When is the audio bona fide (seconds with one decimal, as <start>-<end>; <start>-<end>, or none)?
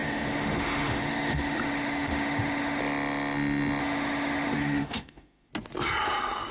2.8-3.8; 5.5-6.5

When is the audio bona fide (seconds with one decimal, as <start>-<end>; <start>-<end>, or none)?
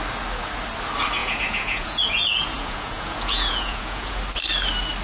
0.0-1.2; 4.2-5.0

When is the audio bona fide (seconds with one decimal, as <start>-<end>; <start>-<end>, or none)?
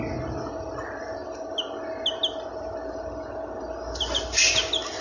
0.0-5.0